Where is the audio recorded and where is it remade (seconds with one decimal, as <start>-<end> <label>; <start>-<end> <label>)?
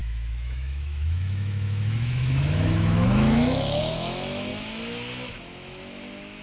0.0-4.5 remade; 4.5-5.3 recorded; 5.3-6.4 remade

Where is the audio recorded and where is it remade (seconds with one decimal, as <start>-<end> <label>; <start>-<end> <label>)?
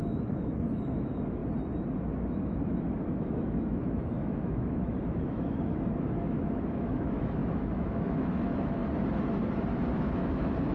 0.0-1.4 remade; 1.4-2.0 recorded; 2.0-8.8 remade; 8.8-10.0 recorded; 10.0-10.7 remade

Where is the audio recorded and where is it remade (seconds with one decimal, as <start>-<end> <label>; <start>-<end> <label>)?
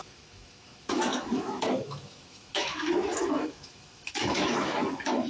0.0-5.3 remade